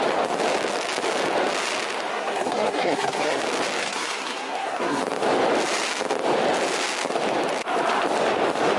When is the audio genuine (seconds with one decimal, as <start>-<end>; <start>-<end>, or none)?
0.0-2.1; 3.4-3.8; 5.0-8.8